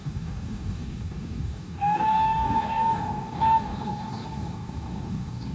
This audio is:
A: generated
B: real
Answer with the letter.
A